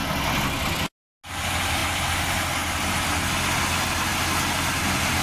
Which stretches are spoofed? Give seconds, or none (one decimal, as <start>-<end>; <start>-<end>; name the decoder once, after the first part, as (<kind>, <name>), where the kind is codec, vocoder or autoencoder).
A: none